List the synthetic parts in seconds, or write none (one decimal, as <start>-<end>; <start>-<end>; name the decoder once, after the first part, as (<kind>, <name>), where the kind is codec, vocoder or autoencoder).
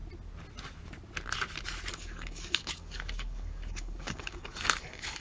1.9-5.2 (codec, DAC)